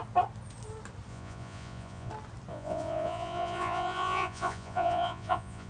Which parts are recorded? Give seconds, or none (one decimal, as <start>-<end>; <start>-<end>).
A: 0.0-1.1; 2.1-2.5